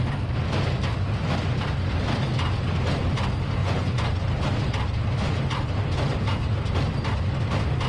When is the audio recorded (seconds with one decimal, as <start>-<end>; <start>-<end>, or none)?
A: 0.0-3.6; 4.3-7.9